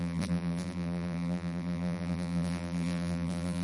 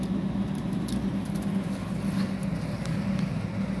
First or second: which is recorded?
second